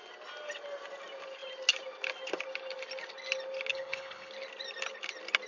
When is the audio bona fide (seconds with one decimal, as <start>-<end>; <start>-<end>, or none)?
0.0-3.7; 4.3-5.5

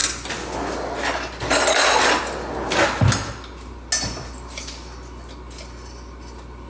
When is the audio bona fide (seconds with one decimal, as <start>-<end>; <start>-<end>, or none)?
0.0-6.7

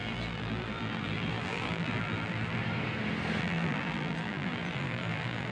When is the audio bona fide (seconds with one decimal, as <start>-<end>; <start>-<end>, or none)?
2.6-3.4